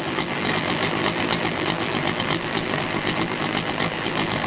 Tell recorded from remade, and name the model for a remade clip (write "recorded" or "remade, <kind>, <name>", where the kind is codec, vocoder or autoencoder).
remade, vocoder, BigVGAN v2